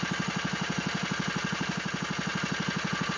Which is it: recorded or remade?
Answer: recorded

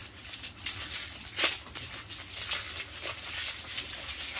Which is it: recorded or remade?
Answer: recorded